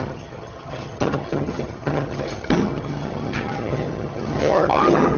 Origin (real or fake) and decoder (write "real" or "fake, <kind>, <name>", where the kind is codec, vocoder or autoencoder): fake, vocoder, HiFi-GAN